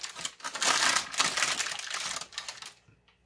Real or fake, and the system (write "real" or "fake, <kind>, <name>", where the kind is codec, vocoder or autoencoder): real